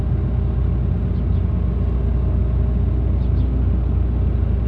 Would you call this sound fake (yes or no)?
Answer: no